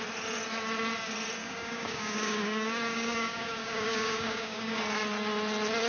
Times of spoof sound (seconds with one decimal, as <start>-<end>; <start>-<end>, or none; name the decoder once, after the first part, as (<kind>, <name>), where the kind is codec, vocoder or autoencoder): 1.4-4.8 (codec, DAC)